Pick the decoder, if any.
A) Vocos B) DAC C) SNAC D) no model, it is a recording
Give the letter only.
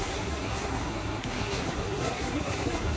C